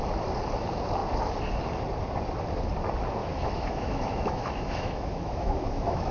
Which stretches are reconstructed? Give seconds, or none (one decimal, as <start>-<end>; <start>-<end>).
3.2-6.1